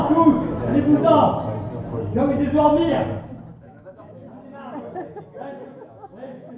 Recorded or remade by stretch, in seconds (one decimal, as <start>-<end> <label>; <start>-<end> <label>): 0.0-0.7 remade; 0.7-3.6 recorded; 3.6-4.2 remade; 4.2-5.7 recorded; 5.7-6.6 remade